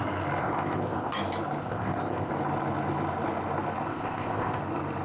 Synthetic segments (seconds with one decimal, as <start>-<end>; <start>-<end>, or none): 0.4-1.1; 1.6-2.3; 3.9-4.6